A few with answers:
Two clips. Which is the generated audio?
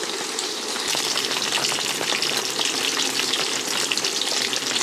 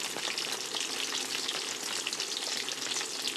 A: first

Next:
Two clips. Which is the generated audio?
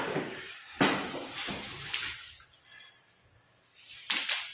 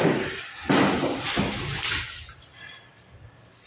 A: second